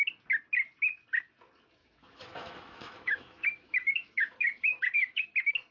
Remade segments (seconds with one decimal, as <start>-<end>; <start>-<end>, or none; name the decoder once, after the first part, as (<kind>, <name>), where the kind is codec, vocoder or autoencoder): 1.8-5.2 (autoencoder, DAC-VAE)